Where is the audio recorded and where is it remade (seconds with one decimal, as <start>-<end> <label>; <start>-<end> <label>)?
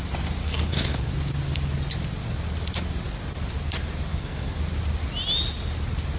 0.0-0.4 recorded; 0.4-1.1 remade; 1.1-4.1 recorded; 4.1-4.6 remade; 4.6-6.2 recorded